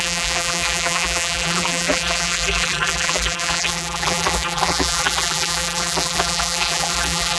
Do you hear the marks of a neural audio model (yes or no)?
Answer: yes